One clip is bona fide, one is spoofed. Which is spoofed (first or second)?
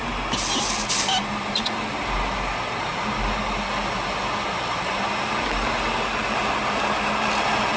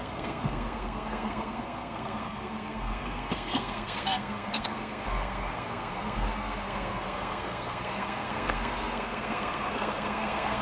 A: second